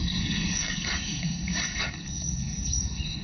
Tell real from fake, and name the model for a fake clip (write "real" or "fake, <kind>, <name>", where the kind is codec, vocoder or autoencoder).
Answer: fake, codec, DAC